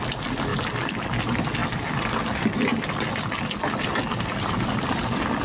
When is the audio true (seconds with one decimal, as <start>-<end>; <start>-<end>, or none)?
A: 0.0-5.4

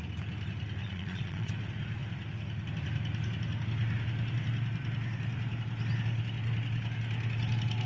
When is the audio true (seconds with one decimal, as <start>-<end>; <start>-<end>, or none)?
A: 0.0-0.8; 1.5-7.9

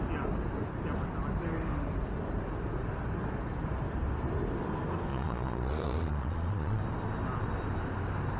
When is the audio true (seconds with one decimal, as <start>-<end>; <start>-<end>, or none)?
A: 0.0-5.1; 6.8-8.4